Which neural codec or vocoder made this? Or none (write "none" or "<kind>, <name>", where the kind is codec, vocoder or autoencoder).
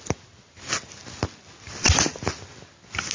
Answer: none